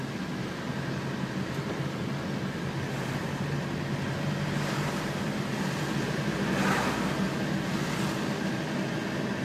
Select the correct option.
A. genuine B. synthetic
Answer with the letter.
A